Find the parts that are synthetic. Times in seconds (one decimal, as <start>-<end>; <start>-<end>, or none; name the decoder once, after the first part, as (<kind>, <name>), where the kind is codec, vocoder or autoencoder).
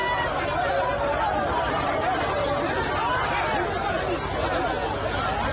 0.0-3.3 (vocoder, BigVGAN v2)